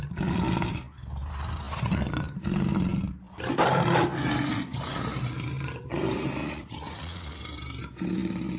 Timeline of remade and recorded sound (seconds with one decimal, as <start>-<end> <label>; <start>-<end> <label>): 0.0-6.4 recorded; 6.4-7.4 remade; 7.4-8.6 recorded